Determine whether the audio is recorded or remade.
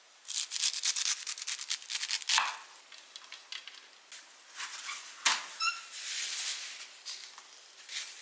recorded